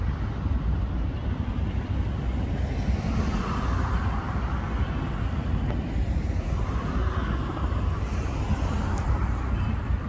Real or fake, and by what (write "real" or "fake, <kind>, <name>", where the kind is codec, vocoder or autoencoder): real